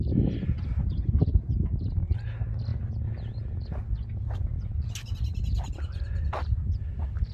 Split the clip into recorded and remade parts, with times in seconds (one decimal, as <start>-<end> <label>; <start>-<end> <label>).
0.0-7.3 recorded

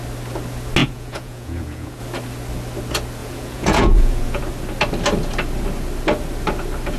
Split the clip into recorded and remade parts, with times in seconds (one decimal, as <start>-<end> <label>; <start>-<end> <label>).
0.0-0.8 recorded; 0.8-2.0 remade; 2.0-3.2 recorded; 3.2-4.4 remade; 4.4-7.0 recorded

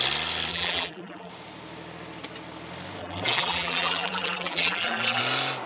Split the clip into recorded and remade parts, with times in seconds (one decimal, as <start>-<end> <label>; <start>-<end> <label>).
0.0-0.5 recorded; 0.5-1.3 remade; 1.3-3.0 recorded; 3.0-5.2 remade; 5.2-5.7 recorded

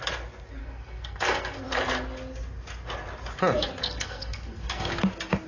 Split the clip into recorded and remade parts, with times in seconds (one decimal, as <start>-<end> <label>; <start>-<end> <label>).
0.0-0.6 recorded; 0.6-1.8 remade; 1.8-3.8 recorded; 3.8-5.0 remade; 5.0-5.5 recorded

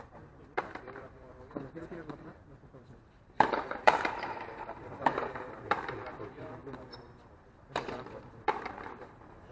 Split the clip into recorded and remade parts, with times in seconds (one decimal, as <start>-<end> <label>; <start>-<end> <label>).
0.0-9.5 remade

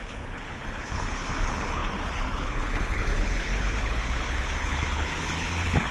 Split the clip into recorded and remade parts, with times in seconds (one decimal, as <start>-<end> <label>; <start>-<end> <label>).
0.0-5.9 remade

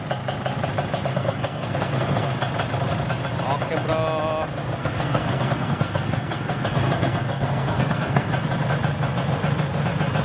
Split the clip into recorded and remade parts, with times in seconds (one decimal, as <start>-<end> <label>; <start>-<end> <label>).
0.0-1.1 recorded; 1.1-2.3 remade; 2.3-4.8 recorded; 4.8-8.3 remade; 8.3-10.2 recorded

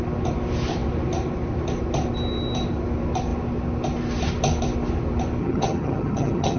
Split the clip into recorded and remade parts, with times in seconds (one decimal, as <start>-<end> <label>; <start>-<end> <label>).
0.0-5.4 recorded; 5.4-6.6 remade